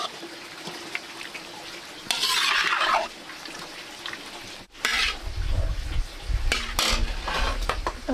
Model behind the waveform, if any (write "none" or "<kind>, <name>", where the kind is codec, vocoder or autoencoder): none